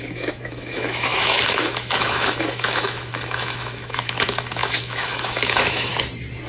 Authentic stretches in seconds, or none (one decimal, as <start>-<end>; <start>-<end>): 5.9-6.5